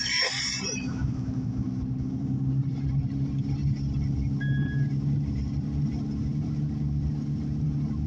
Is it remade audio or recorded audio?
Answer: remade